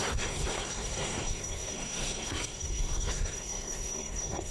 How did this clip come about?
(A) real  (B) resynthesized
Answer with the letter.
B